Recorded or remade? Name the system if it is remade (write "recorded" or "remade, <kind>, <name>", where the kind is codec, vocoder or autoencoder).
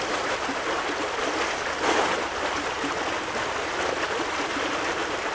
recorded